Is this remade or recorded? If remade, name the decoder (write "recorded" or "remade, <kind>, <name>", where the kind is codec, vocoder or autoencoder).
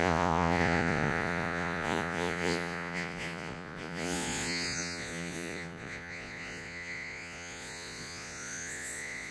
remade, vocoder, Vocos